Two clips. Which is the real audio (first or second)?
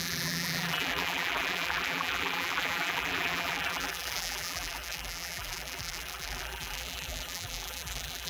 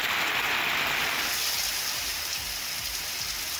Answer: second